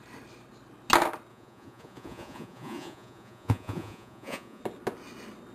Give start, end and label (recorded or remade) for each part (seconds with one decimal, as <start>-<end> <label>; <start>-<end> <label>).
0.0-1.3 recorded; 1.3-4.6 remade; 4.6-5.5 recorded

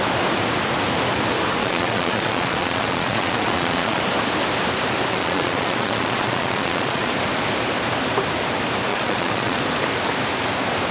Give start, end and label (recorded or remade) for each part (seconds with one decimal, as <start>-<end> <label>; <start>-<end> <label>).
0.0-1.6 recorded; 1.6-4.0 remade; 4.0-5.1 recorded; 5.1-7.1 remade; 7.1-8.9 recorded; 8.9-9.6 remade; 9.6-10.9 recorded

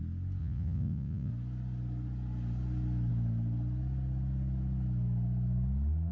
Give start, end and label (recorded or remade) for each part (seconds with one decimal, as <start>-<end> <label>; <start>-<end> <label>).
0.0-0.4 recorded; 0.4-1.3 remade; 1.3-6.1 recorded

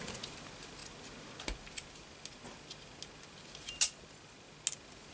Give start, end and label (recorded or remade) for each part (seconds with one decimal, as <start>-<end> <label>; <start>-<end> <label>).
0.0-5.1 recorded

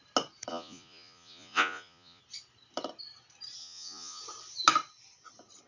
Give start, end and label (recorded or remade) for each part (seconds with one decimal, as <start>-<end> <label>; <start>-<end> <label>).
0.0-0.5 recorded; 0.5-2.2 remade; 2.2-3.6 recorded; 3.6-4.2 remade; 4.2-5.7 recorded